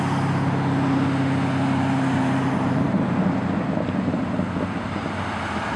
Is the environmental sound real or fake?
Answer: real